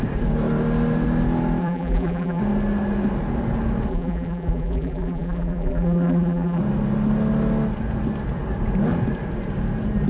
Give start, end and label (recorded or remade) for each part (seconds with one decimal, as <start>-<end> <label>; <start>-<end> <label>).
0.0-1.6 recorded; 1.6-2.4 remade; 2.4-3.9 recorded; 3.9-6.6 remade; 6.6-10.1 recorded